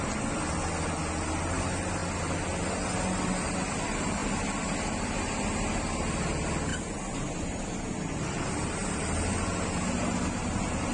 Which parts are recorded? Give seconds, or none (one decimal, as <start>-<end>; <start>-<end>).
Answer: 0.0-10.9